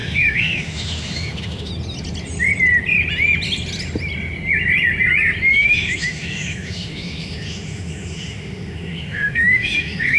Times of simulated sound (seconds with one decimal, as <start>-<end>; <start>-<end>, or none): 0.0-1.7; 5.5-10.2